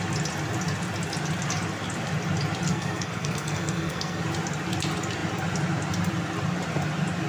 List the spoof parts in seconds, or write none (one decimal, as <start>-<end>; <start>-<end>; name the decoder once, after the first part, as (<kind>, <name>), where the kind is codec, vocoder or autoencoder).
2.7-4.2 (codec, SNAC)